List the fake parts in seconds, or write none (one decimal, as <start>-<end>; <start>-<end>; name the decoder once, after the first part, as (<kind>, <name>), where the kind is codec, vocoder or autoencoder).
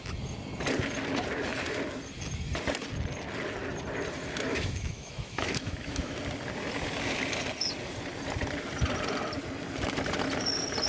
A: 4.5-6.2 (autoencoder, DAC-VAE)